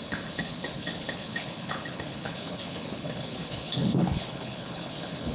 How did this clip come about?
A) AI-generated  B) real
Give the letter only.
A